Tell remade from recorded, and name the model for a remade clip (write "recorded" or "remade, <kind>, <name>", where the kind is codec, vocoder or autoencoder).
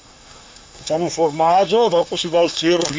remade, codec, SNAC